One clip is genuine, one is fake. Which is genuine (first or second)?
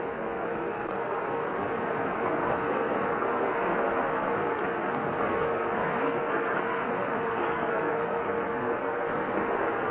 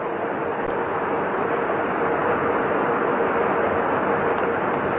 second